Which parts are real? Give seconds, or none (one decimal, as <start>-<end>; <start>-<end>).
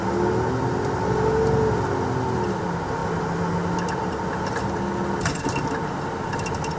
0.0-6.8